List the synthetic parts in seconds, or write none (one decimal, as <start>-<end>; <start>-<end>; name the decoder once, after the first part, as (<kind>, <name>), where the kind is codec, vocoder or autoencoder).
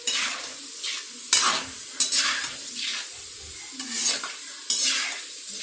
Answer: 0.0-0.5 (vocoder, BigVGAN v2); 2.2-2.9; 4.1-5.6